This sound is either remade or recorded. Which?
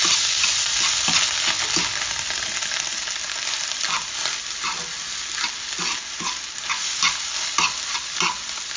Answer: recorded